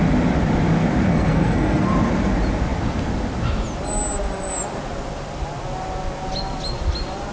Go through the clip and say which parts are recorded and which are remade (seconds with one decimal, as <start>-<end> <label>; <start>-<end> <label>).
0.0-1.1 recorded; 1.1-1.9 remade; 1.9-7.3 recorded